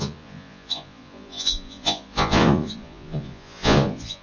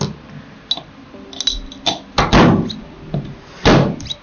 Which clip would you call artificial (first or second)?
first